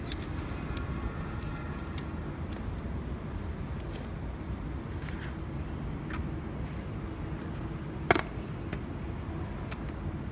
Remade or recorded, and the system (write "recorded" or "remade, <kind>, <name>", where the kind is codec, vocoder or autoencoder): recorded